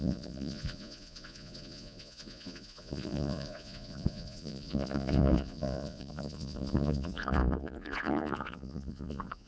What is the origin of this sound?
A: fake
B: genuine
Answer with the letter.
A